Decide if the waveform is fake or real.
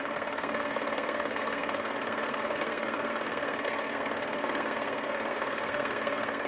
fake